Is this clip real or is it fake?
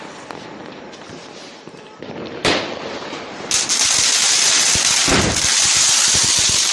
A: real